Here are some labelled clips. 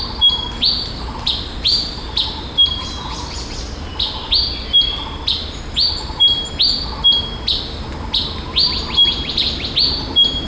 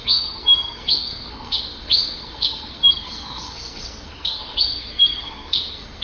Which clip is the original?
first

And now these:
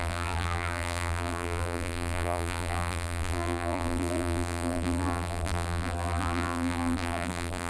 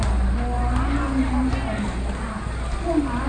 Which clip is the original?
second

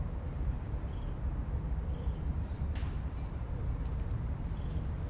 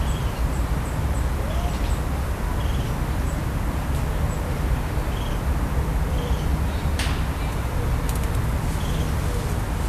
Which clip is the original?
second